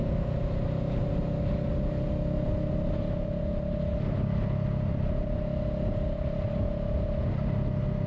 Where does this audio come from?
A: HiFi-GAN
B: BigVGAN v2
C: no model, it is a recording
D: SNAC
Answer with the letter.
C